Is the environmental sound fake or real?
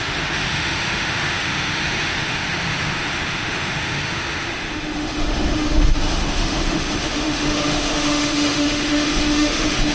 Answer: fake